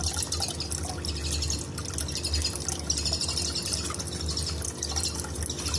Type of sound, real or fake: real